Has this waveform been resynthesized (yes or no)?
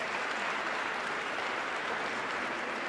yes